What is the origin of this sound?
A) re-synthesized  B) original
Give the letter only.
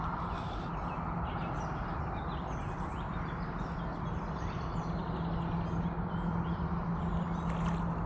B